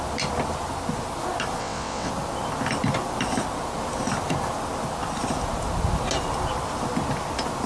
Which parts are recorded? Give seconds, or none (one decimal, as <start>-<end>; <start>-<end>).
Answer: 0.0-1.6; 2.1-7.7